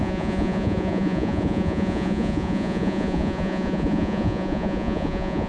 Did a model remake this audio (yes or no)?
yes